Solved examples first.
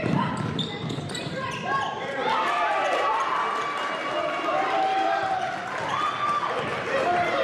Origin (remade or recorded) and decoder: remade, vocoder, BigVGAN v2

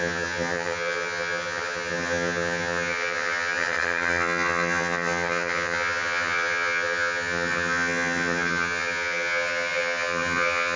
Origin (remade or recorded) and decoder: remade, vocoder, HiFi-GAN